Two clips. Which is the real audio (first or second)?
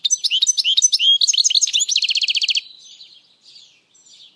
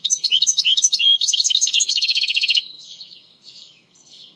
first